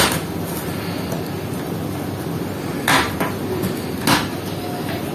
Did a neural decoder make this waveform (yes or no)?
no